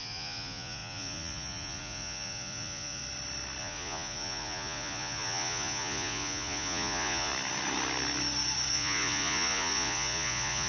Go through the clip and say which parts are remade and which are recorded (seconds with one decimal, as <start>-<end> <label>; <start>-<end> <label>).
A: 0.0-3.0 remade; 3.0-3.6 recorded; 3.6-7.3 remade; 7.3-8.7 recorded; 8.7-10.7 remade

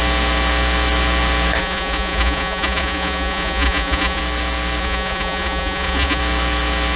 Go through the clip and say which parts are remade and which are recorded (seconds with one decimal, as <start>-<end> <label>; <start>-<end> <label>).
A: 0.0-1.6 recorded; 1.6-4.2 remade; 4.2-4.8 recorded; 4.8-6.2 remade; 6.2-7.0 recorded